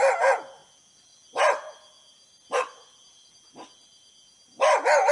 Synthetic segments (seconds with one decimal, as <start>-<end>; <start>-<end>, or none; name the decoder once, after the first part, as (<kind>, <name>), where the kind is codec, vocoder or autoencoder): none